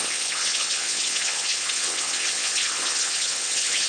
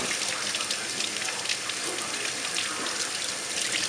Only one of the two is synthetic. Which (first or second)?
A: first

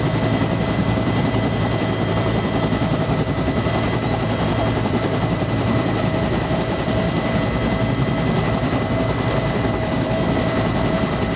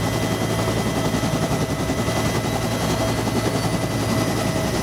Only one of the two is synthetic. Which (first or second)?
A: first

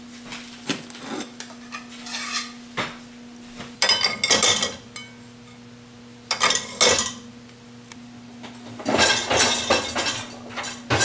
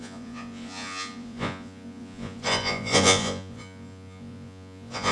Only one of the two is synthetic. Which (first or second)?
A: second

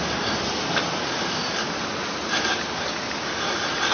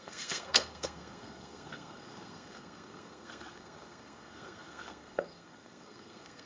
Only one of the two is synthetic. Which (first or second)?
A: second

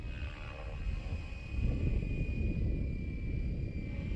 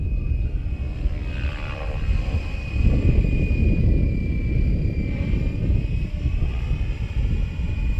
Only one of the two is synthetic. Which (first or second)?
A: second